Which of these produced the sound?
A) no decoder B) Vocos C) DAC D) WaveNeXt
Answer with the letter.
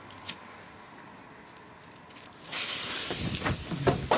A